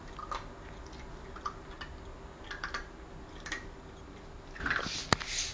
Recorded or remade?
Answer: recorded